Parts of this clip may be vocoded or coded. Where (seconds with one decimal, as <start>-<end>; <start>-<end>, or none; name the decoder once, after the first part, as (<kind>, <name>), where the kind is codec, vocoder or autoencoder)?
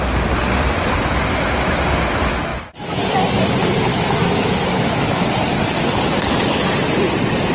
2.5-3.0 (autoencoder, DAC-VAE); 3.9-5.3